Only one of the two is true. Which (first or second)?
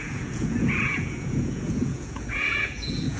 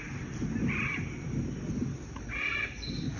second